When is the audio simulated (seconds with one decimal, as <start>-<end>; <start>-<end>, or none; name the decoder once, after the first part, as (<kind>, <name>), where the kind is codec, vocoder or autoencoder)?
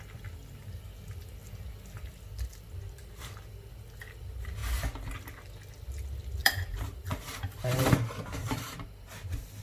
6.4-9.1 (vocoder, BigVGAN v2)